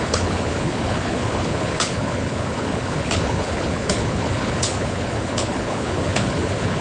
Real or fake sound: fake